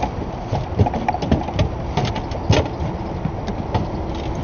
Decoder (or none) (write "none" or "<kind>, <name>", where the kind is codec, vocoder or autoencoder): none